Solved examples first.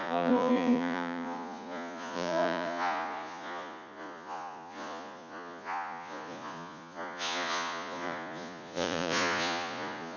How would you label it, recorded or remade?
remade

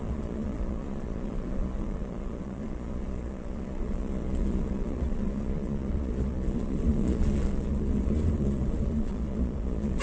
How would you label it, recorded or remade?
remade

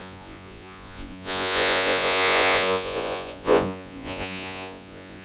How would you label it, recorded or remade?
remade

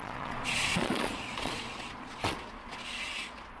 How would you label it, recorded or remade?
remade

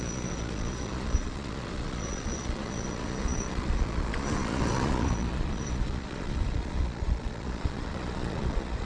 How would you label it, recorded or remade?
remade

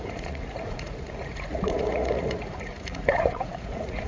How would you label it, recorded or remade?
remade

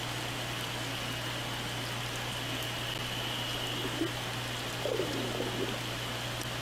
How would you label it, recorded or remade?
recorded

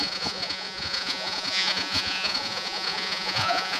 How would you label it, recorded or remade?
remade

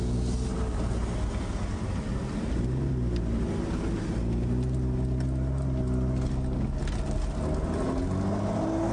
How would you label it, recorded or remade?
recorded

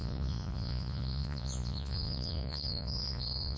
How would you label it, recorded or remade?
remade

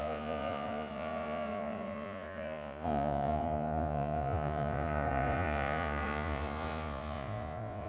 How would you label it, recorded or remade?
remade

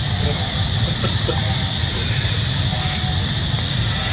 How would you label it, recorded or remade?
recorded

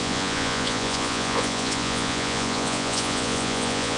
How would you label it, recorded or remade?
remade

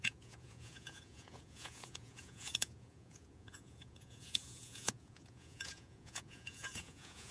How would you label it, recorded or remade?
remade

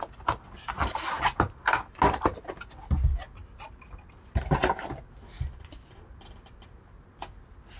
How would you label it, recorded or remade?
recorded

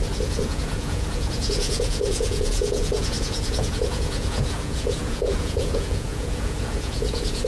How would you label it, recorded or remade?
remade